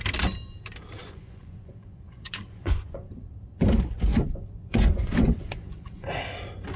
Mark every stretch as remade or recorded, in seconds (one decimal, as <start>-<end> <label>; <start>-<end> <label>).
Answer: 0.0-1.0 recorded; 1.0-3.2 remade; 3.2-4.1 recorded; 4.1-6.1 remade; 6.1-6.8 recorded